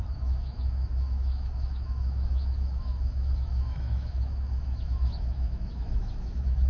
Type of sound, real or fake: fake